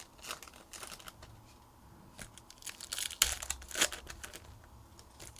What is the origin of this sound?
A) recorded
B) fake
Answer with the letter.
A